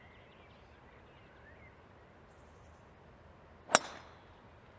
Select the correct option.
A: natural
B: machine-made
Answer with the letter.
A